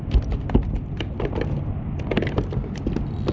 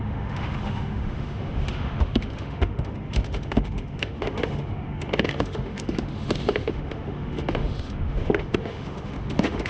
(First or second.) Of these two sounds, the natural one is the first